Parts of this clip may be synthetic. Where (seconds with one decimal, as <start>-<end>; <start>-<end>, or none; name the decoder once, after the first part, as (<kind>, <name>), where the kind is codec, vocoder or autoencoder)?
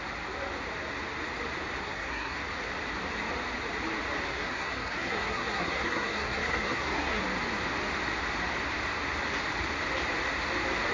1.8-2.4 (codec, SNAC); 4.3-7.2